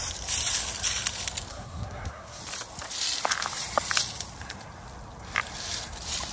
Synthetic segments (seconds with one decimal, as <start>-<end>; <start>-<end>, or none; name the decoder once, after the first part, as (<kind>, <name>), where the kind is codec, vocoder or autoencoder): 1.5-2.4 (codec, SNAC)